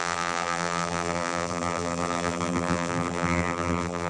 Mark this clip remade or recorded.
remade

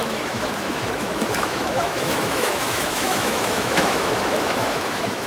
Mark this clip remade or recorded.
remade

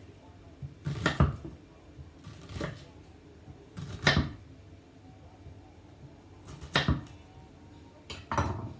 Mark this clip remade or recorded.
recorded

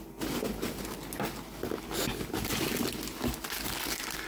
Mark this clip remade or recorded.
recorded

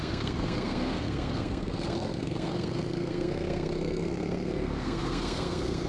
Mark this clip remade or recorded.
remade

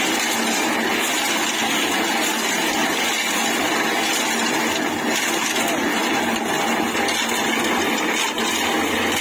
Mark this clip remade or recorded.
recorded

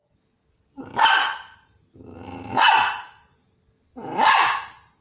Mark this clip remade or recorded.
recorded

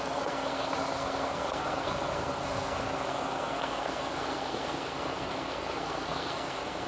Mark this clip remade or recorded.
remade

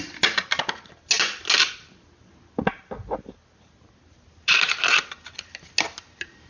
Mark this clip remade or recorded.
recorded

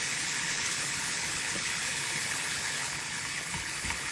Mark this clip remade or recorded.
remade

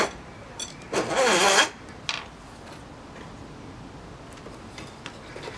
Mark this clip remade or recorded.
recorded